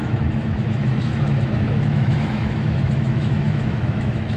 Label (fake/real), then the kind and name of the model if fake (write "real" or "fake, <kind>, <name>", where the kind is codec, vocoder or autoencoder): fake, autoencoder, DAC-VAE